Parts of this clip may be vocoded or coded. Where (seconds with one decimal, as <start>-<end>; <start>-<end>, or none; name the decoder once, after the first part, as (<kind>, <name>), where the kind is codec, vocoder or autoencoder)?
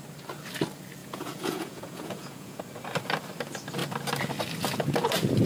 1.0-2.6 (vocoder, Vocos)